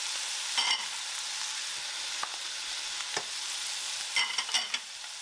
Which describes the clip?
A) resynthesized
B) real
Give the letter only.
B